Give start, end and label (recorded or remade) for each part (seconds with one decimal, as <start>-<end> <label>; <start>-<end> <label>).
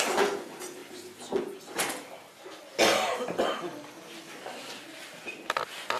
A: 0.0-6.0 recorded